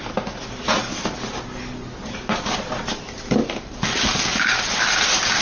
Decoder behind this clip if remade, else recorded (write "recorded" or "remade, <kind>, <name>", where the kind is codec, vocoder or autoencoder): recorded